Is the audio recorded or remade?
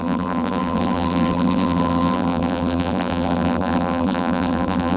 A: remade